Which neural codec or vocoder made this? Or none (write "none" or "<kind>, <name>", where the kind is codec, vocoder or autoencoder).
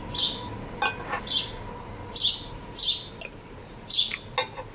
none